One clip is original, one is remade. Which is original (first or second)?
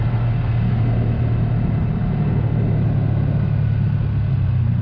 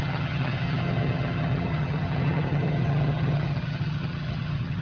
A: first